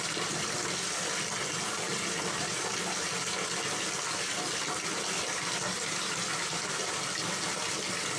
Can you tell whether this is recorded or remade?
recorded